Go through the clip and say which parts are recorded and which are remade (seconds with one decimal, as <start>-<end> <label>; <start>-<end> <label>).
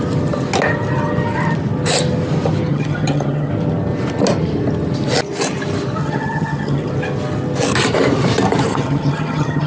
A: 0.0-2.7 recorded; 2.7-3.5 remade; 3.5-6.0 recorded; 6.0-6.9 remade; 6.9-8.7 recorded; 8.7-9.7 remade